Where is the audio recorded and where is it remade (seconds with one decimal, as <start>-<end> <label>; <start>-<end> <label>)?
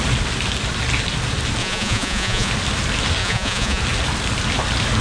0.0-1.6 recorded; 1.6-2.5 remade; 2.5-3.2 recorded; 3.2-3.8 remade; 3.8-5.0 recorded